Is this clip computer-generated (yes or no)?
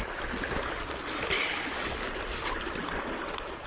no